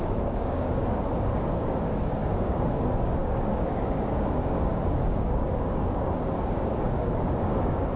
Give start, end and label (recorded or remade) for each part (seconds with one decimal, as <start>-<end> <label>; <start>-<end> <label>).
0.0-8.0 remade